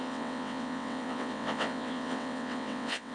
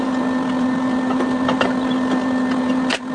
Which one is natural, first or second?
second